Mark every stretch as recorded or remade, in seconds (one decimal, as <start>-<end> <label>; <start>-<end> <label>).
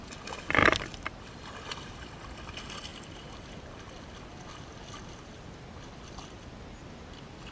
0.0-7.5 recorded